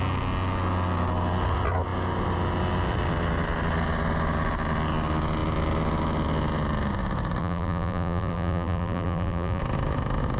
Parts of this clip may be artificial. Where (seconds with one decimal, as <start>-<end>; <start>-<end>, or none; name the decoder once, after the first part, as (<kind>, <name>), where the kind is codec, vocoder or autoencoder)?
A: 7.4-9.6 (vocoder, BigVGAN v2)